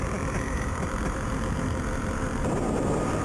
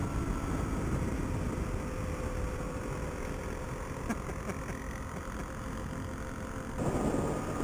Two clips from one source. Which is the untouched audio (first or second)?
second